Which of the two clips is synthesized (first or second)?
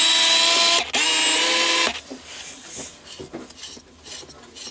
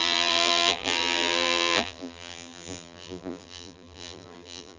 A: second